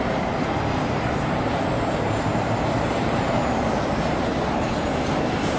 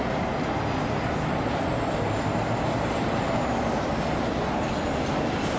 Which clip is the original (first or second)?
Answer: second